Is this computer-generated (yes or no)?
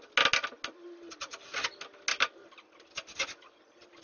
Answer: no